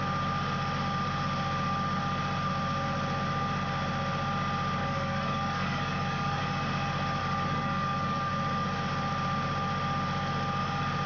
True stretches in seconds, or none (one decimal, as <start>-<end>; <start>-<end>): 0.0-4.8; 6.4-7.2; 8.3-11.1

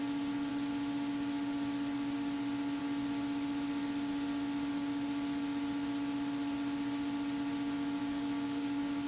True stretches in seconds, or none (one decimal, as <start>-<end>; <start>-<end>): 0.0-8.0

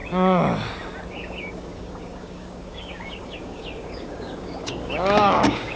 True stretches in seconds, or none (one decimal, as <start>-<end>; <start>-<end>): 0.0-1.1

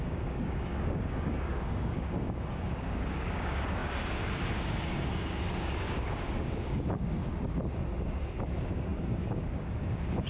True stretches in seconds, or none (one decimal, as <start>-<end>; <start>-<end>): 7.2-8.2